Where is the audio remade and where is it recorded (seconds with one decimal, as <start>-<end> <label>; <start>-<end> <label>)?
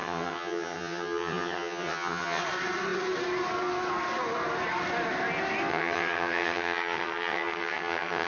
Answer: 0.0-2.4 remade; 2.4-5.7 recorded; 5.7-8.3 remade